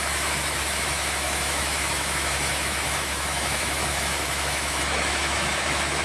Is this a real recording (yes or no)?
no